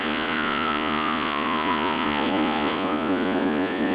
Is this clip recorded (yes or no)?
no